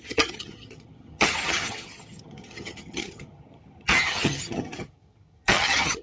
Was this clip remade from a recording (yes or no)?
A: yes